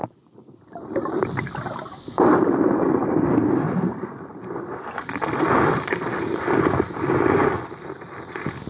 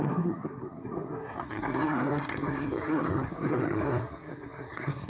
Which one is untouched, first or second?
first